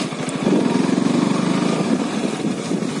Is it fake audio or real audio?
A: real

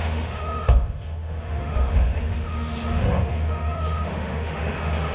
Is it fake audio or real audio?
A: fake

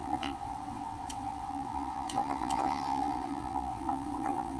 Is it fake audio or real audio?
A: fake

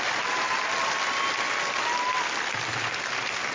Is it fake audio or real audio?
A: real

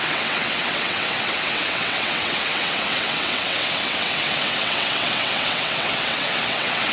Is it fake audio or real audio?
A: fake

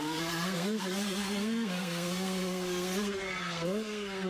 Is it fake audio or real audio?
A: fake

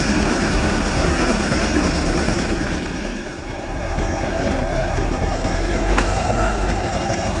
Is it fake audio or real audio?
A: fake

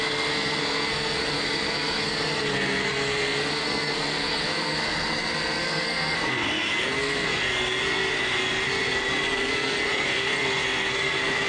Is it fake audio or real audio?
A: fake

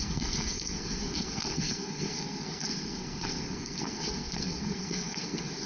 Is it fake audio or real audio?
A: fake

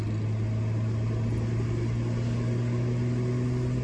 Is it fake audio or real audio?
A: real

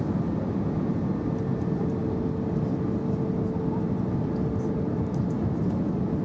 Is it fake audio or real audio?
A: real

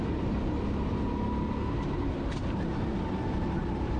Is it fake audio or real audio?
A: real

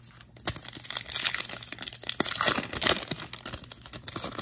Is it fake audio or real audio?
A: real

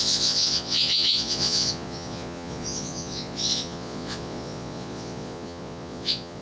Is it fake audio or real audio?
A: fake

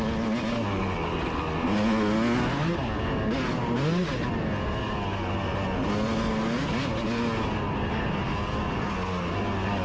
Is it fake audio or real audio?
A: real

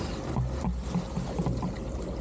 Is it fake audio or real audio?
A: real